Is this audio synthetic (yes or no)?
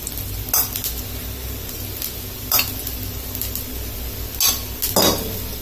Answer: no